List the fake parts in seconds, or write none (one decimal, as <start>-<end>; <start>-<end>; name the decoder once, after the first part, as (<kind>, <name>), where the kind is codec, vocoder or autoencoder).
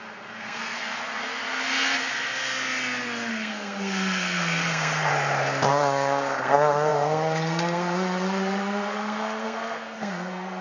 0.0-1.4 (codec, SNAC); 3.3-5.1; 5.7-10.6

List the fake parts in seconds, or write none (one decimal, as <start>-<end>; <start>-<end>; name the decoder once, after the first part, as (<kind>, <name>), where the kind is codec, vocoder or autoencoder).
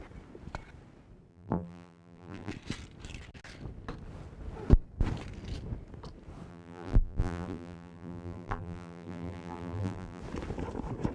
1.3-2.5 (vocoder, BigVGAN v2); 6.5-10.2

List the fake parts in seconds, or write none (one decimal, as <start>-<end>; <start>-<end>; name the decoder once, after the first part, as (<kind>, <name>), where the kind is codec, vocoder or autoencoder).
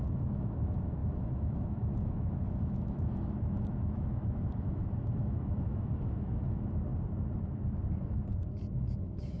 0.0-6.9 (autoencoder, DAC-VAE); 8.8-9.4